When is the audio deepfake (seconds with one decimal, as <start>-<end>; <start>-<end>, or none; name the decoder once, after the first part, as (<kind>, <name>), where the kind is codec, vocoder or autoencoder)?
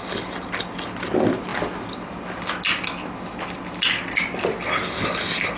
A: none